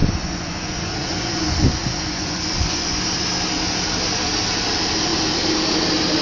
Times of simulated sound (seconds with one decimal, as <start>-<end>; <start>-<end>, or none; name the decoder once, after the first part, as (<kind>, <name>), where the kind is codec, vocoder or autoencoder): 0.0-3.0 (vocoder, Vocos)